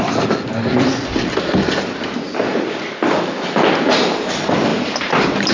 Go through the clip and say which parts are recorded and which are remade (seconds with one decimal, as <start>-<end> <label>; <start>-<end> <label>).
0.0-4.7 recorded; 4.7-5.5 remade